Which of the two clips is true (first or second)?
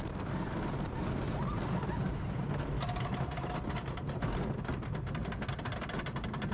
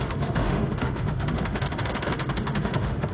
first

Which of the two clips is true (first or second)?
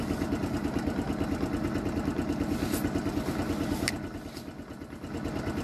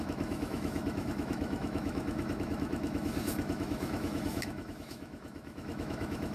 first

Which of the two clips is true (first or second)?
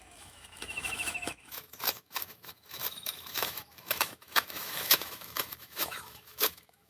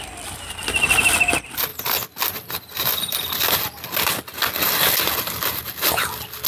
second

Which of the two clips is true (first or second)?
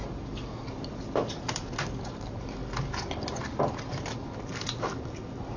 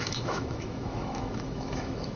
first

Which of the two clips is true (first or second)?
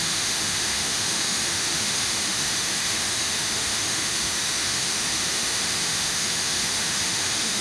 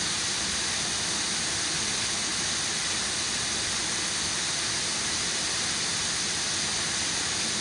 second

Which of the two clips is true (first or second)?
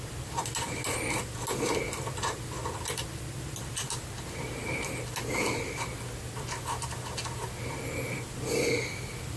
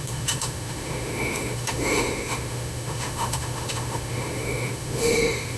first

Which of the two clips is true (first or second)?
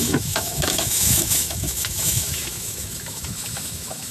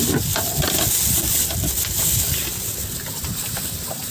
second